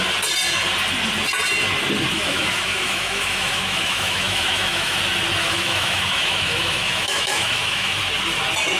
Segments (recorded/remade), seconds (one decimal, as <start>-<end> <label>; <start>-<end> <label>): 0.0-2.1 recorded; 2.1-5.0 remade; 5.0-5.4 recorded; 5.4-8.0 remade; 8.0-8.8 recorded

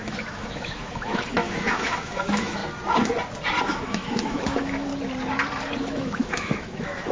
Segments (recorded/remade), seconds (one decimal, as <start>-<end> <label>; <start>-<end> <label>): 0.0-2.6 remade; 2.6-3.6 recorded; 3.6-4.9 remade; 4.9-5.8 recorded; 5.8-7.1 remade